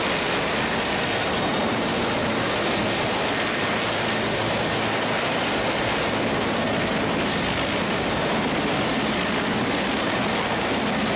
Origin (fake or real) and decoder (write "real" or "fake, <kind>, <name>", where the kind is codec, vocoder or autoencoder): real